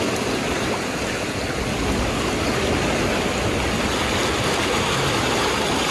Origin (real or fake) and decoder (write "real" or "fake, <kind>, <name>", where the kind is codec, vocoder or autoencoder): real